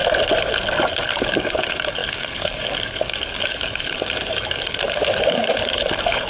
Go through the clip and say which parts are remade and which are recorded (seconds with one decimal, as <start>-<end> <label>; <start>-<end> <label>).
0.0-1.1 recorded; 1.1-6.3 remade